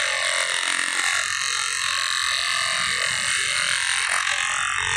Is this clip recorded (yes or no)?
no